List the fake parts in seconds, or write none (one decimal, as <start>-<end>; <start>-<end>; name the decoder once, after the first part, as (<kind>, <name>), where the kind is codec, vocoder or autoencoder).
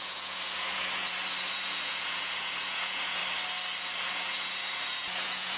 0.0-1.0 (vocoder, Vocos); 1.5-3.2; 4.1-5.6